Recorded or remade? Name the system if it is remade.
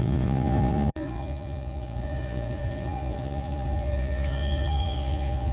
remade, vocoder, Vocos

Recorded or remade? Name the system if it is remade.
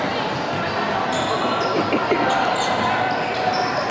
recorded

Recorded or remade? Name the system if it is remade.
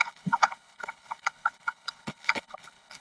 remade, codec, HILCodec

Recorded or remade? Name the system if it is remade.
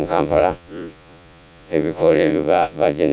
remade, vocoder, Vocos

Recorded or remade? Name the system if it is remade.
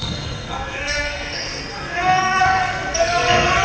remade, codec, SNAC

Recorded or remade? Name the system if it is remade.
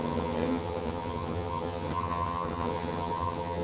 remade, vocoder, HiFi-GAN